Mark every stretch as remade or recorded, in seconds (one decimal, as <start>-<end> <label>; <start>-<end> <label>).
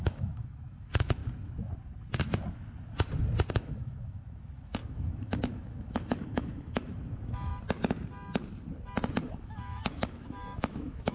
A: 0.0-1.2 remade; 1.2-3.5 recorded; 3.5-7.5 remade; 7.5-9.3 recorded; 9.3-11.1 remade